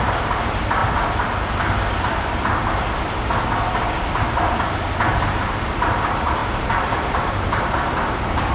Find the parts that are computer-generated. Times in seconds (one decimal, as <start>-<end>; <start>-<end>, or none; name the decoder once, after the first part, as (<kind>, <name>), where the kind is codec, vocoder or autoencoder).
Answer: 0.0-0.8 (vocoder, BigVGAN v2); 5.4-8.5